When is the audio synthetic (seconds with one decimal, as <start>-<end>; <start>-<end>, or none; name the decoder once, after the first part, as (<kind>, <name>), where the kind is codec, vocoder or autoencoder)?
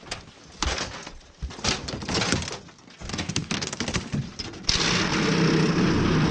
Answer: 3.1-3.8 (codec, DAC)